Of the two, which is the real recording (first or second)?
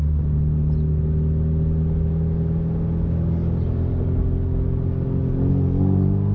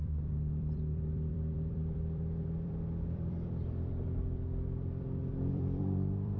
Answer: first